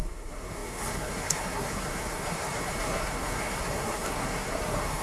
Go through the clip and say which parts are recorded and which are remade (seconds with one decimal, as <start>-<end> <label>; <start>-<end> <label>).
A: 0.0-5.0 remade